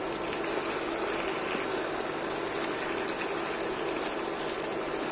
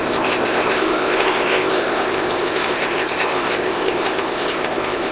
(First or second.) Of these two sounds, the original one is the first